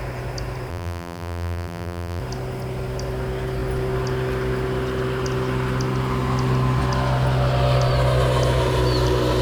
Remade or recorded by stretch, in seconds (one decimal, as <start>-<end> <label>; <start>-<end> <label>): 0.0-0.7 recorded; 0.7-2.2 remade; 2.2-9.4 recorded